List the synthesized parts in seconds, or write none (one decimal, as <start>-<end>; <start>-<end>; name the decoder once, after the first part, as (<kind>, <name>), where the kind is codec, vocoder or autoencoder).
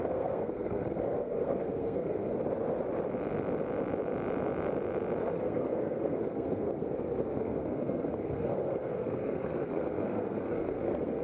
0.0-2.3 (codec, SNAC); 5.3-11.2